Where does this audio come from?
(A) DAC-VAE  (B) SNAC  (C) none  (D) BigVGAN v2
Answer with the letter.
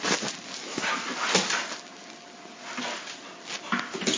C